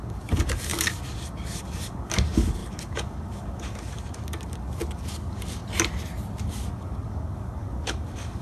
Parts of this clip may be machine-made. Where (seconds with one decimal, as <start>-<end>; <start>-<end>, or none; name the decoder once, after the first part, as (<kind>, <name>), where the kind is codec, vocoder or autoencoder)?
0.0-5.6 (codec, DAC); 6.4-8.4